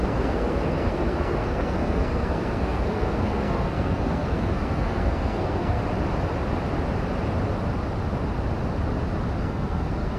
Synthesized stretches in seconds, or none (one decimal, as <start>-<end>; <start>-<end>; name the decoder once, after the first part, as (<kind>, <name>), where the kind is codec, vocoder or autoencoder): 0.0-5.8 (codec, SNAC); 9.4-10.2